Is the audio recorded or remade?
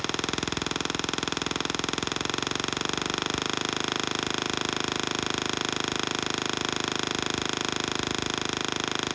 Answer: recorded